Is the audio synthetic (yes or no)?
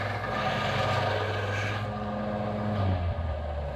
no